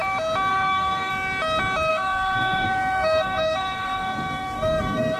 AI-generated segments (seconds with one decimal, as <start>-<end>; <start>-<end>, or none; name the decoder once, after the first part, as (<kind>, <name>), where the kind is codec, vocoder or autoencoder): 0.5-1.1 (codec, SNAC); 1.9-5.2

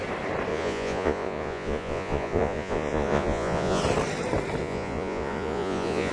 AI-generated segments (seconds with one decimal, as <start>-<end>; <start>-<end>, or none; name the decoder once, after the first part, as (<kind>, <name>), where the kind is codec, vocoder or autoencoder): 0.5-3.8 (vocoder, Vocos); 4.6-6.1

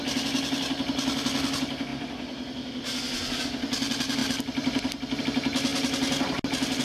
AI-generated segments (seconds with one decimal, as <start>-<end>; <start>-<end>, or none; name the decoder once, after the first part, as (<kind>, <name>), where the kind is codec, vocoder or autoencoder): 4.2-5.2 (vocoder, BigVGAN v2)